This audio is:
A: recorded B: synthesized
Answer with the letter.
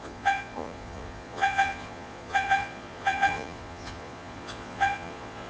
B